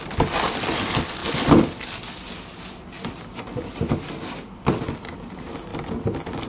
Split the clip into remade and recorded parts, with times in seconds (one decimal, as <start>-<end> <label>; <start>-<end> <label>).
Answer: 0.0-1.2 remade; 1.2-4.3 recorded; 4.3-5.7 remade; 5.7-6.5 recorded